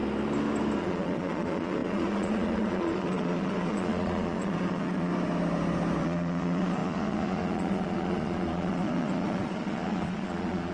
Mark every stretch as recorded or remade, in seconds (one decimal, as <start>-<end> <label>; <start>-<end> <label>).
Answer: 0.0-0.8 recorded; 0.8-5.1 remade; 5.1-6.0 recorded; 6.0-10.7 remade